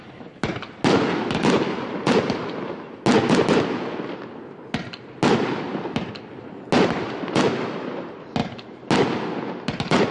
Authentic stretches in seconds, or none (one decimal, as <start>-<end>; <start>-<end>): 0.0-10.1